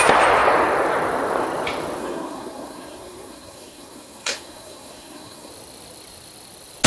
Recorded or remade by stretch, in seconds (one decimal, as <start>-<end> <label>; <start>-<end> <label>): 0.0-2.0 recorded; 2.0-5.5 remade; 5.5-6.9 recorded

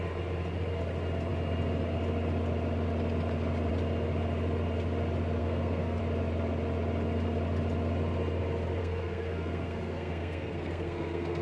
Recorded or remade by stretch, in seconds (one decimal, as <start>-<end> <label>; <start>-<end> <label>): 0.0-5.4 recorded; 5.4-6.0 remade; 6.0-8.8 recorded; 8.8-11.4 remade

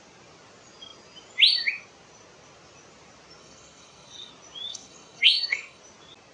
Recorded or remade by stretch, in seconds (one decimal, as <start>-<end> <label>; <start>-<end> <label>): 0.0-3.4 recorded; 3.4-4.3 remade; 4.3-4.7 recorded; 4.7-5.8 remade; 5.8-6.3 recorded

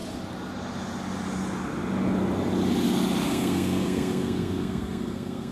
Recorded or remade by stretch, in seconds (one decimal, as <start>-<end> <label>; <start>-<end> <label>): 0.0-3.3 recorded; 3.3-5.5 remade

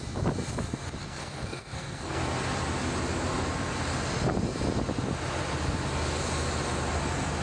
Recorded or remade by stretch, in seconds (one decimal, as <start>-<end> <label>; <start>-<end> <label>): 0.0-1.0 recorded; 1.0-2.2 remade; 2.2-7.4 recorded

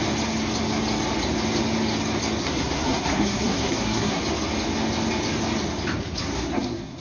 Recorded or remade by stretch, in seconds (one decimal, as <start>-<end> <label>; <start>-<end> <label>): 0.0-2.4 recorded; 2.4-4.2 remade; 4.2-6.2 recorded; 6.2-7.0 remade